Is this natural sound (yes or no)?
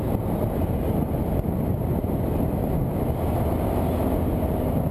yes